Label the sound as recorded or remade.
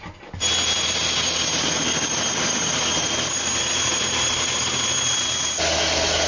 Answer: recorded